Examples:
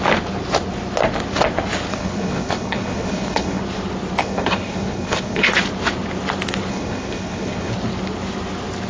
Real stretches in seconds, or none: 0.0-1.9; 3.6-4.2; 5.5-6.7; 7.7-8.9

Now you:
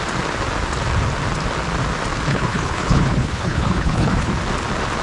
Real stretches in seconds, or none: 0.0-2.3; 4.3-5.0

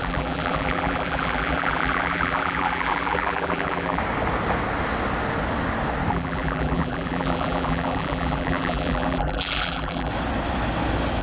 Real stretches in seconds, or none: 4.0-6.1; 10.1-11.2

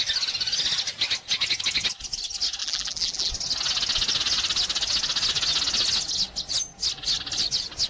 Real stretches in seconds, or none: 0.0-2.6; 3.3-7.9

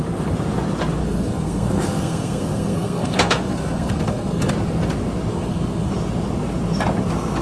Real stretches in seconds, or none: 0.0-1.0; 4.5-5.3; 5.9-7.4